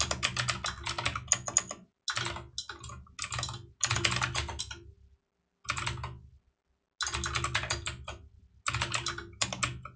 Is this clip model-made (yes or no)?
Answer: no